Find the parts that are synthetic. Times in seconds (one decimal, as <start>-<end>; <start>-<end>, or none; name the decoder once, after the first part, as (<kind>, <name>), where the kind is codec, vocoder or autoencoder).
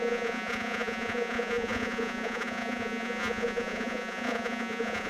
0.0-5.1 (vocoder, Vocos)